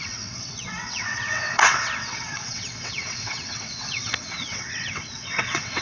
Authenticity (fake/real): fake